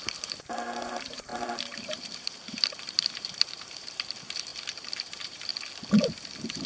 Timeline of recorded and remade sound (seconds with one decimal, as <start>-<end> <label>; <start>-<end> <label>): 0.0-5.5 remade; 5.5-6.1 recorded; 6.1-6.7 remade